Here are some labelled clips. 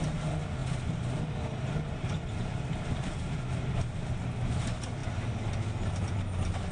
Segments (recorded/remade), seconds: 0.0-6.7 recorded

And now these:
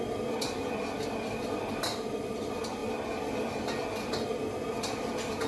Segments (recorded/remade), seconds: 0.0-5.5 recorded

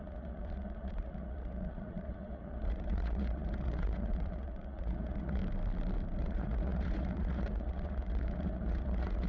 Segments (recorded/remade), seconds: 0.0-5.4 remade; 5.4-6.2 recorded; 6.2-9.3 remade

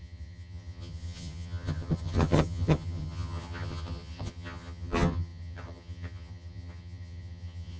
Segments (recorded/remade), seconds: 0.0-7.8 remade